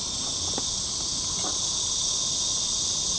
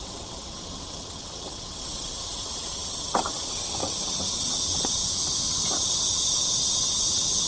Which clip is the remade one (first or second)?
second